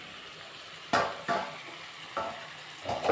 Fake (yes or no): no